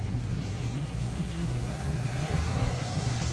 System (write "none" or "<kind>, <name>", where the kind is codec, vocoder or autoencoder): codec, SNAC